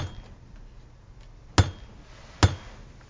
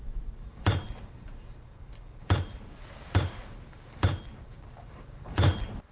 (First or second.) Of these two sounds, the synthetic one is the second